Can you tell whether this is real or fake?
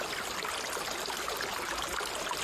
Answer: real